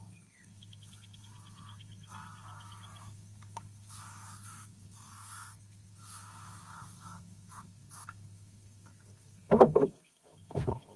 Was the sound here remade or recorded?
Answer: remade